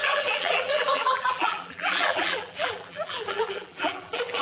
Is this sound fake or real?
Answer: fake